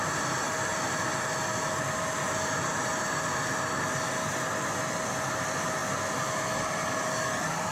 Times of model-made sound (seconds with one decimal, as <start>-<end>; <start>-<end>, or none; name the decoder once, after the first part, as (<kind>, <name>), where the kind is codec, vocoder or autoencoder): none